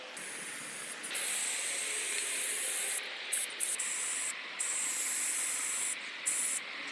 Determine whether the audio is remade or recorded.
recorded